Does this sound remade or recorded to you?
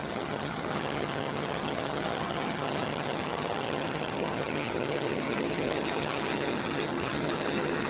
remade